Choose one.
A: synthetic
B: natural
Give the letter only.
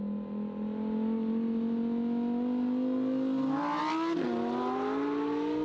B